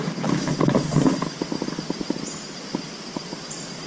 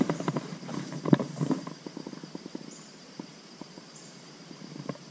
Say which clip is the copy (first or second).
second